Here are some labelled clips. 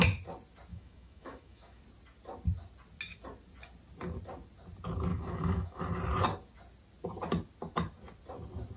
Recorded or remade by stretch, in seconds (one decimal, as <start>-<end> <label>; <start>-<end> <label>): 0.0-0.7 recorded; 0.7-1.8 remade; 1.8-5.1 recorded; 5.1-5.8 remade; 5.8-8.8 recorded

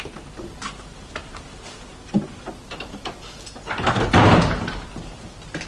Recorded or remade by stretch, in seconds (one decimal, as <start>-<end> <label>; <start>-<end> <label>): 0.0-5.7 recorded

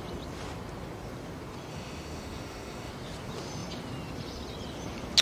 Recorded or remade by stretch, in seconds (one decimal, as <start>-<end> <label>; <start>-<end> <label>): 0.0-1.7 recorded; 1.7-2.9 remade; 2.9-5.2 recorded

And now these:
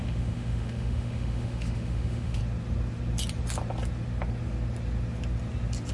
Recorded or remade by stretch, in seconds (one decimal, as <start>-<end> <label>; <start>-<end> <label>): 0.0-2.4 remade; 2.4-5.9 recorded

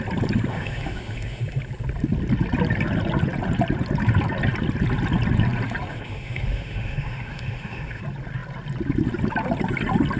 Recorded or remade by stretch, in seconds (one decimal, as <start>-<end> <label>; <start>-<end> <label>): 0.0-0.5 recorded; 0.5-1.4 remade; 1.4-5.9 recorded; 5.9-8.0 remade; 8.0-10.2 recorded

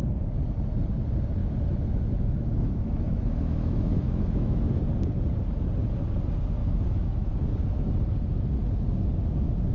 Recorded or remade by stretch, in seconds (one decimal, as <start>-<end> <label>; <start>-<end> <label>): 0.0-1.4 recorded; 1.4-4.8 remade; 4.8-6.6 recorded; 6.6-7.3 remade; 7.3-9.7 recorded

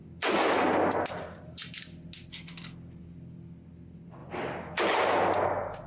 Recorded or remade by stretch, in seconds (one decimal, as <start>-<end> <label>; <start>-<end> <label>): 0.0-5.9 recorded